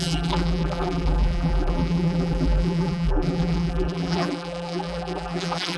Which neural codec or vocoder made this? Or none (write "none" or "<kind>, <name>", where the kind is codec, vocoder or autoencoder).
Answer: vocoder, BigVGAN v2